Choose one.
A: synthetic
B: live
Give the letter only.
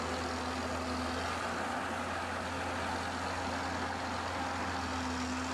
B